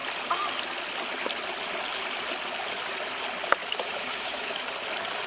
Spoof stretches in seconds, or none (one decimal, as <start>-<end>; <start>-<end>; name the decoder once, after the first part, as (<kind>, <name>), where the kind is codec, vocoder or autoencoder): 3.6-4.6 (autoencoder, DAC-VAE)